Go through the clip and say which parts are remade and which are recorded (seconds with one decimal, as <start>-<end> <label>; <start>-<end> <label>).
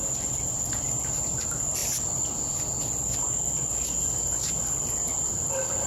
0.0-5.9 recorded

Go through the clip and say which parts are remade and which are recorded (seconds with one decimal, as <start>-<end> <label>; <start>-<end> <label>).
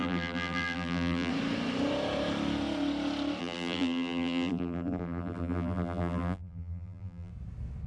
0.0-1.3 remade; 1.3-3.4 recorded; 3.4-7.3 remade; 7.3-7.9 recorded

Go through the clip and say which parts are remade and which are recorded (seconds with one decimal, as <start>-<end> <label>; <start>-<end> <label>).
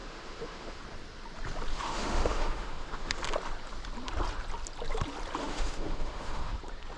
0.0-0.8 remade; 0.8-1.7 recorded; 1.7-3.1 remade; 3.1-5.4 recorded; 5.4-6.6 remade; 6.6-7.0 recorded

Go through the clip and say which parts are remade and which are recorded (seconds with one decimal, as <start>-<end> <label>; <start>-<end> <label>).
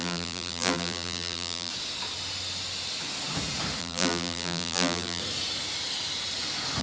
0.0-1.7 remade; 1.7-3.8 recorded; 3.8-5.2 remade; 5.2-6.8 recorded